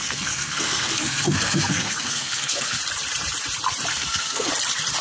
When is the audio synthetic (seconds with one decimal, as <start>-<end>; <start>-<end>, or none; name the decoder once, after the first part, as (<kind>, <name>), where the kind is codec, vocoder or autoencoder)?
0.0-2.8 (codec, SNAC); 3.9-4.5